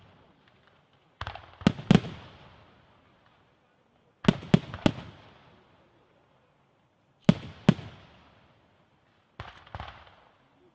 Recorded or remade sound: recorded